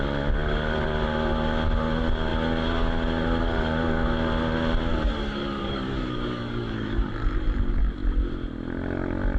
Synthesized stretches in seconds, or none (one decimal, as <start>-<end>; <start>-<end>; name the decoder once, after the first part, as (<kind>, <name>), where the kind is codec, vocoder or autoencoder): 4.9-7.1 (codec, DAC)